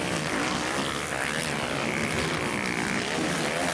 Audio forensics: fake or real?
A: real